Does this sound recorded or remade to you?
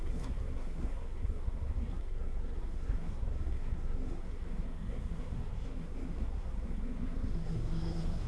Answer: remade